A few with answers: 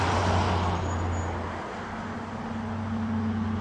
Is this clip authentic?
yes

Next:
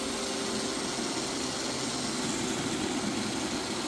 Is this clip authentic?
yes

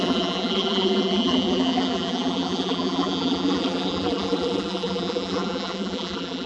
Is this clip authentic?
no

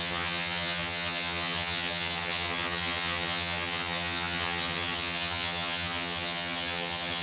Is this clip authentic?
no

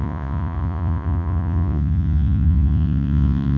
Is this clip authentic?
no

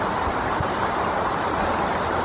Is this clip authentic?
yes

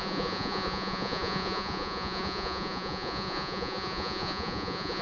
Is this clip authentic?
no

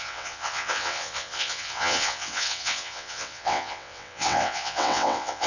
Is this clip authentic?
no